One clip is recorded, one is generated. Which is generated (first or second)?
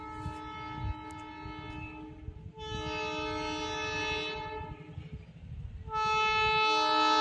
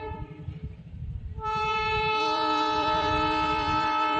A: second